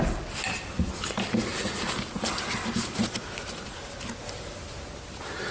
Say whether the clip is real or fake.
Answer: real